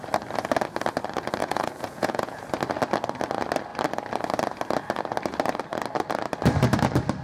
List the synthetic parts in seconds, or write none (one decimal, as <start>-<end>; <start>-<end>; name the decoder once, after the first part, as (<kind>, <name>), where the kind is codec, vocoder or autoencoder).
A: 1.4-2.4 (vocoder, Vocos)